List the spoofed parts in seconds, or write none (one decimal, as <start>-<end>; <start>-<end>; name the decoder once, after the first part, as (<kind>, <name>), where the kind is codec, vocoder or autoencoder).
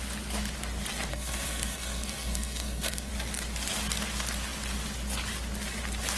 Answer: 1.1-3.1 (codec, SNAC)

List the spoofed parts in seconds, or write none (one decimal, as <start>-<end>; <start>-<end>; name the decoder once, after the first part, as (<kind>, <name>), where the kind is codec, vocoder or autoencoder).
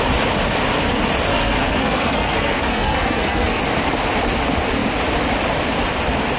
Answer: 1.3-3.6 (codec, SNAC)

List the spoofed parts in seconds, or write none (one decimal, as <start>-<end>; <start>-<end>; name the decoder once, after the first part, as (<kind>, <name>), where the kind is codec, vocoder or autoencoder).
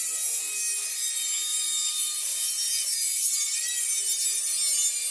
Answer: 1.5-3.3 (vocoder, BigVGAN v2)